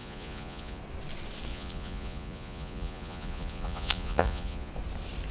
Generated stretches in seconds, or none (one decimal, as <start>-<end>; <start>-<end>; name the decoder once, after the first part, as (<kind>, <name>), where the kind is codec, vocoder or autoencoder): 0.0-0.8 (vocoder, Vocos); 1.5-4.7